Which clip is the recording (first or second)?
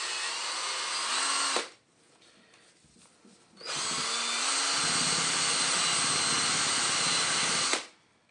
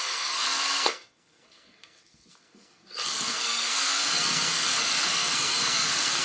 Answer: first